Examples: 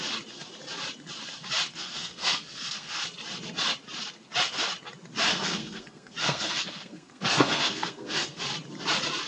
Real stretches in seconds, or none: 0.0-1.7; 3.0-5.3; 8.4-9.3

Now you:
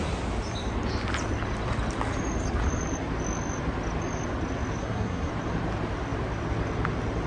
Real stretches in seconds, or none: 0.0-4.8; 5.3-7.3

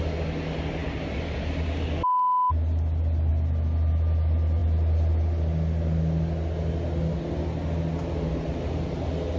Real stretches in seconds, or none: 0.0-9.4

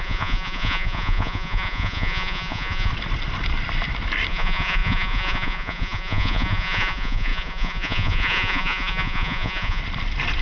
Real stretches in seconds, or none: 2.9-4.3; 9.8-10.4